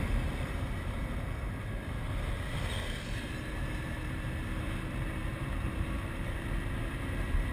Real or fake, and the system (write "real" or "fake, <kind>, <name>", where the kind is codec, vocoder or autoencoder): fake, vocoder, BigVGAN v2